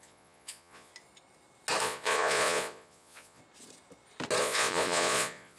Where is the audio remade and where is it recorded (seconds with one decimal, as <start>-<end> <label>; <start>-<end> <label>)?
0.0-0.9 remade; 0.9-1.8 recorded; 1.8-3.4 remade; 3.4-4.4 recorded; 4.4-5.6 remade